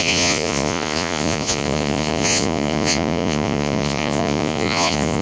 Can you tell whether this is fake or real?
fake